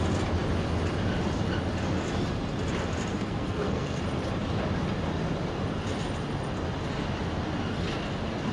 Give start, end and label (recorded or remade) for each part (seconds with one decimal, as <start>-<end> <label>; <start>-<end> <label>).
0.0-3.1 recorded; 3.1-4.0 remade; 4.0-8.5 recorded